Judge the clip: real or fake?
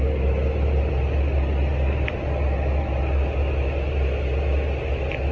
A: real